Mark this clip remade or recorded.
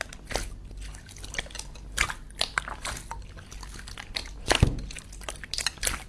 recorded